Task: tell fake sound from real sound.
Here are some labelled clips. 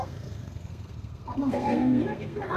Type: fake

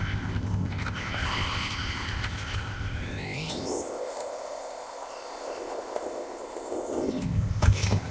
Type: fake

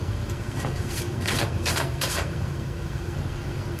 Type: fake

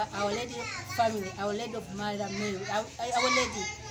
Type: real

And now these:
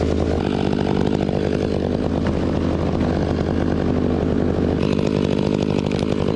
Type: real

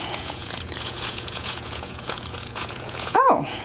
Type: fake